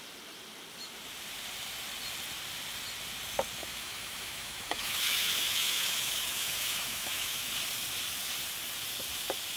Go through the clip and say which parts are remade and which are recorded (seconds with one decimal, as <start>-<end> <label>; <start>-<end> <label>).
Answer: 0.0-3.6 recorded; 3.6-7.5 remade; 7.5-9.6 recorded